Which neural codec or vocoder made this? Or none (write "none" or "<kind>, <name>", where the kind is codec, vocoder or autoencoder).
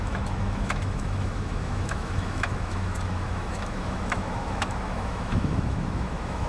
autoencoder, DAC-VAE